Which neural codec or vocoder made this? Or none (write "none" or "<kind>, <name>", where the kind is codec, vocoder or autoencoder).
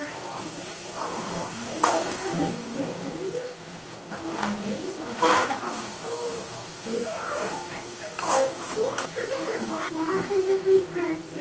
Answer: codec, DAC